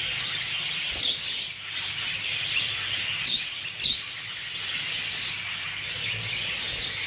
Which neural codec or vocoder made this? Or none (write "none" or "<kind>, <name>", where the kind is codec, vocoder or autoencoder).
none